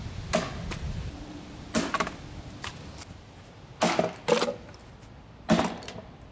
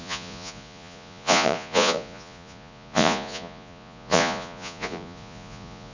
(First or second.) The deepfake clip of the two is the second